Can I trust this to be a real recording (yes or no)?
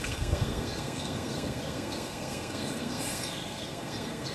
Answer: no